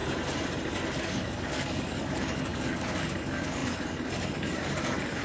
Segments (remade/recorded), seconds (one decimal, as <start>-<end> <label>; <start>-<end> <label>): 0.0-1.0 recorded; 1.0-5.2 remade

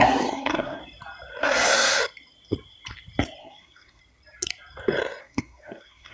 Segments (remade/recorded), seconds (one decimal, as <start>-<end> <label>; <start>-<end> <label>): 0.0-0.8 remade; 0.8-1.4 recorded; 1.4-2.0 remade; 2.0-3.4 recorded; 3.4-4.0 remade; 4.0-5.2 recorded; 5.2-6.1 remade

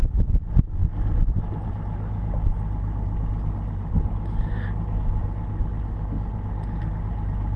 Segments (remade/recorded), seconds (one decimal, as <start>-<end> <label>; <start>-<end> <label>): 0.0-7.6 recorded

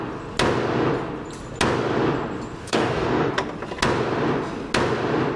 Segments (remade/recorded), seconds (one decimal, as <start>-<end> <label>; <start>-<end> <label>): 0.0-2.6 recorded; 2.6-3.3 remade; 3.3-5.4 recorded

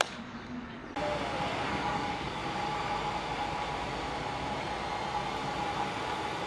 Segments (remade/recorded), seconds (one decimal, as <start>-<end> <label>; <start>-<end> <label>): 0.0-0.8 remade; 0.8-1.7 recorded; 1.7-2.4 remade; 2.4-6.5 recorded

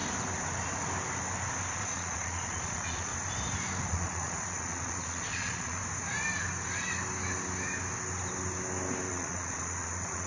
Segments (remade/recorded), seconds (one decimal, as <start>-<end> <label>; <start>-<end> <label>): 0.0-1.7 recorded; 1.7-3.1 remade; 3.1-3.9 recorded; 3.9-5.8 remade; 5.8-9.1 recorded; 9.1-10.3 remade